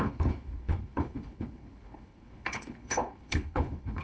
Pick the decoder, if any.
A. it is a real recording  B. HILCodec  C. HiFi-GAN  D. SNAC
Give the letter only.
B